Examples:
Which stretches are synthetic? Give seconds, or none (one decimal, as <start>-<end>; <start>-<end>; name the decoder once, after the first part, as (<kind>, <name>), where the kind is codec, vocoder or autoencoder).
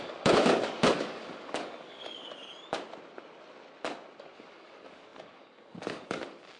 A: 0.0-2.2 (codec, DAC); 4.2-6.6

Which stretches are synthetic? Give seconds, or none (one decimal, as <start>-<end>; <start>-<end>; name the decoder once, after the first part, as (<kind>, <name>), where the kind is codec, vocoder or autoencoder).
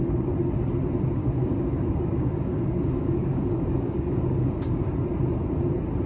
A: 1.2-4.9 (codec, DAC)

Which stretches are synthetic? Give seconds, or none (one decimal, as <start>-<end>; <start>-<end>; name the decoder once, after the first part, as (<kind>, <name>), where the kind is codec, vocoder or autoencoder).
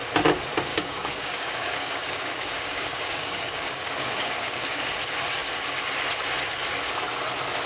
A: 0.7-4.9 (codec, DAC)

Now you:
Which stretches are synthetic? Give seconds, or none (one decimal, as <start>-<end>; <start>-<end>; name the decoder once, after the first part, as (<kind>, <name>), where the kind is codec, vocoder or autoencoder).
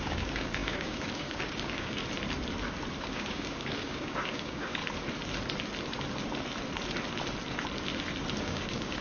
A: 0.0-2.0 (codec, DAC); 3.0-4.8; 8.4-9.0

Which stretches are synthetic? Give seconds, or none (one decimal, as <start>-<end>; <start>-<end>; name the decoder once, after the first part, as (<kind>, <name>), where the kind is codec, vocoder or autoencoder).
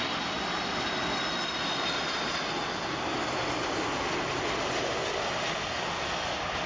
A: none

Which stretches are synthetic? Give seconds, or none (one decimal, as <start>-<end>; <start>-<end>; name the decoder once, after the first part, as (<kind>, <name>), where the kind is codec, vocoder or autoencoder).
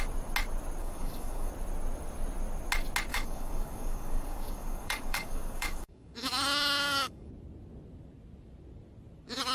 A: 0.8-1.5 (codec, DAC); 3.1-7.3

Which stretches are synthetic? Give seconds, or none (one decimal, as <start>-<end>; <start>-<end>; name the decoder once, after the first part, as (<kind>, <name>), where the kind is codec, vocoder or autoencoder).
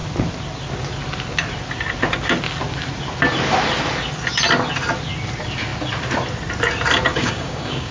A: 7.1-7.9 (codec, DAC)